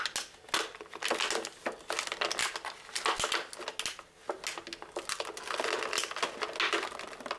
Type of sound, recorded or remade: recorded